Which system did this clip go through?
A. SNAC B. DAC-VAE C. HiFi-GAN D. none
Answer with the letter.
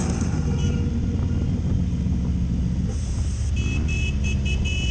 D